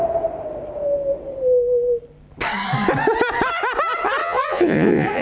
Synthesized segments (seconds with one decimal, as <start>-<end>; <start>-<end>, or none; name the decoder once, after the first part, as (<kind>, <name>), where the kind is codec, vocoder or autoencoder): 4.2-5.2 (vocoder, Vocos)